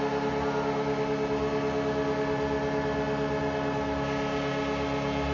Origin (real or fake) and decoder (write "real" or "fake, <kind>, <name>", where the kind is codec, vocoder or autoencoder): real